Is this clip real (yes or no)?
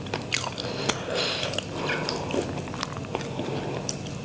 yes